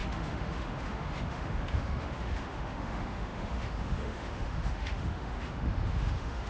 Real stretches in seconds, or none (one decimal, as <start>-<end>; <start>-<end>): none